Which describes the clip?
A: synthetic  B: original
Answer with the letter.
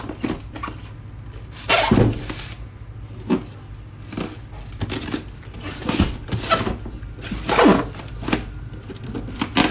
B